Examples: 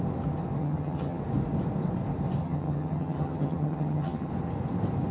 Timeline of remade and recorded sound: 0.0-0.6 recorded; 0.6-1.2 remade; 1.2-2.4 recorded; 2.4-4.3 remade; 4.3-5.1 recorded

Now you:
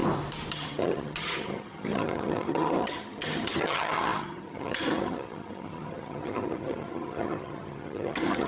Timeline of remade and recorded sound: 0.0-0.5 recorded; 0.5-8.5 remade

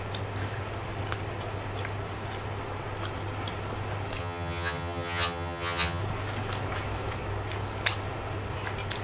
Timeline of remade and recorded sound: 0.0-4.2 recorded; 4.2-6.0 remade; 6.0-9.0 recorded

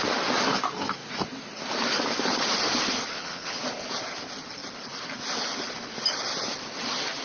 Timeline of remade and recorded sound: 0.0-3.1 recorded; 3.1-3.6 remade; 3.6-7.2 recorded